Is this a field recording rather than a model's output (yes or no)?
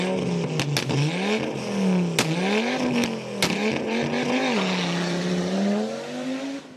yes